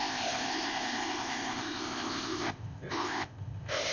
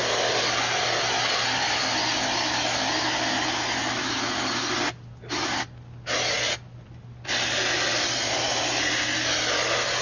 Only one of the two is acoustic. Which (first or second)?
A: second